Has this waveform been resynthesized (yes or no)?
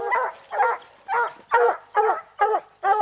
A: no